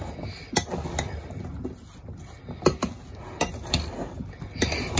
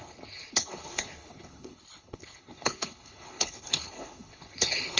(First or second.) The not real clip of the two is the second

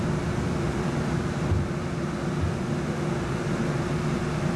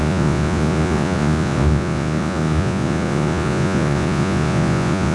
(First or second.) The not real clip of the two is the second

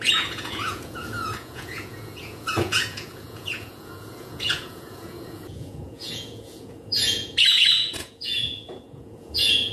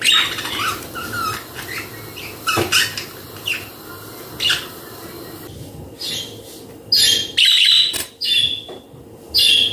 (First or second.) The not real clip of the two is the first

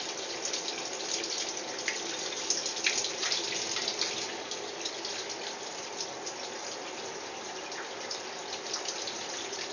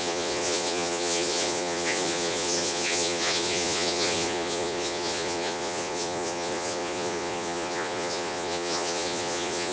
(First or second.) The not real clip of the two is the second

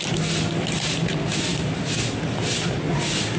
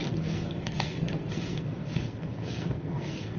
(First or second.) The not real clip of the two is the second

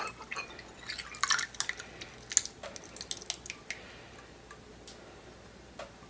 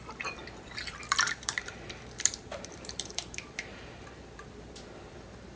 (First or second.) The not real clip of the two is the second